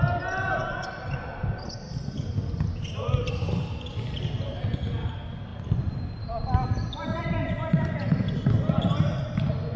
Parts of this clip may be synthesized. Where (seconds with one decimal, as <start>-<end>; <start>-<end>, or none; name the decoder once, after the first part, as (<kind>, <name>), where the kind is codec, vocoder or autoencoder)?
none

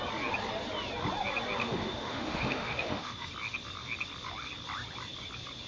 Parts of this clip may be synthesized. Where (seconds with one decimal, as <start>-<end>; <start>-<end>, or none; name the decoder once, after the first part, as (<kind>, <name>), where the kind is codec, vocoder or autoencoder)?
1.6-3.3 (autoencoder, DAC-VAE)

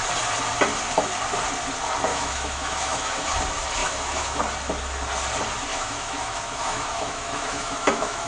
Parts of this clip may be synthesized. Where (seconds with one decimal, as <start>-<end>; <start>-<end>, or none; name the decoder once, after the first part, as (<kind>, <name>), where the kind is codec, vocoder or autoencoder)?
2.1-3.4 (autoencoder, DAC-VAE); 3.8-4.4; 5.7-8.3

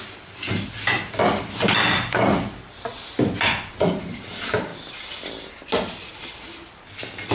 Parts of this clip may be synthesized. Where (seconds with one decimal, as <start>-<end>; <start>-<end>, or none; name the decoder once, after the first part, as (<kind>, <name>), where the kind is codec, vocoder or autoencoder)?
none

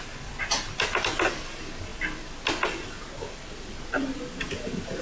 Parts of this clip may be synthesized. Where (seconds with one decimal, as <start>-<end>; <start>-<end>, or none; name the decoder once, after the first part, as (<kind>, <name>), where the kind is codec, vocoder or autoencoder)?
none

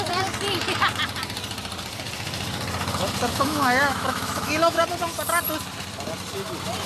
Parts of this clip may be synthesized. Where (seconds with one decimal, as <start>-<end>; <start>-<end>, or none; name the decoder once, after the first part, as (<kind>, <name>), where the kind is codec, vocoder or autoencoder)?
3.3-4.8 (autoencoder, DAC-VAE)

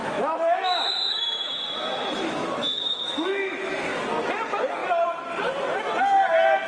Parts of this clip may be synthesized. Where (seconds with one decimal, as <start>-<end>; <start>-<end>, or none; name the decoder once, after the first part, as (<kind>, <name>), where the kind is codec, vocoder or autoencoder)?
0.0-4.0 (autoencoder, DAC-VAE)